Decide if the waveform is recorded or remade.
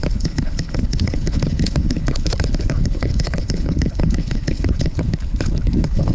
remade